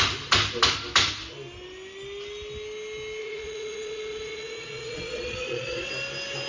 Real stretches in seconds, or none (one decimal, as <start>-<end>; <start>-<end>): 0.0-3.2; 5.9-6.5